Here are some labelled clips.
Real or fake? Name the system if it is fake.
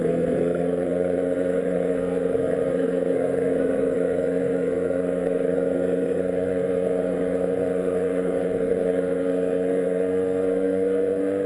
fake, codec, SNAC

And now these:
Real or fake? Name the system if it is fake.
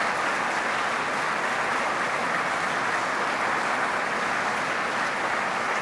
real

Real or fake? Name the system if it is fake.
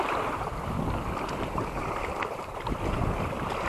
fake, vocoder, BigVGAN v2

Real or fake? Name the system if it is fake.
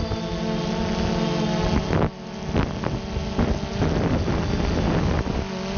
real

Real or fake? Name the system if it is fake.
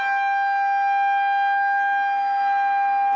real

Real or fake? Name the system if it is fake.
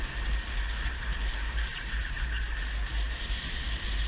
real